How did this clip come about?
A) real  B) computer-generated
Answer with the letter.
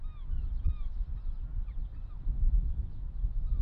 A